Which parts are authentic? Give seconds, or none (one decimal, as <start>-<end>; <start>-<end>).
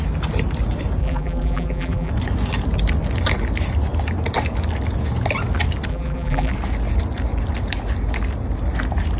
0.0-1.0; 2.1-5.9; 6.5-9.2